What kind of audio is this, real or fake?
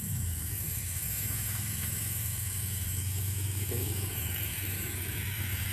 fake